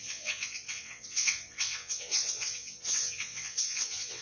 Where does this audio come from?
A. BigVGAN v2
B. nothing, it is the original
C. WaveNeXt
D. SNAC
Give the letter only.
C